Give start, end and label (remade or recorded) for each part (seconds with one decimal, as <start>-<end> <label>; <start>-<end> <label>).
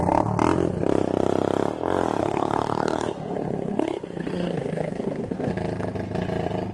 0.0-2.2 recorded; 2.2-5.5 remade; 5.5-6.7 recorded